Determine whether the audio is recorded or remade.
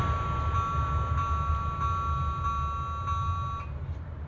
recorded